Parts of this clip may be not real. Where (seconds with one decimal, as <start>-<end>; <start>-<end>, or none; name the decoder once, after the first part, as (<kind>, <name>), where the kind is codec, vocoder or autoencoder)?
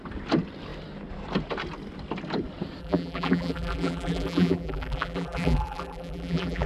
2.8-6.7 (vocoder, BigVGAN v2)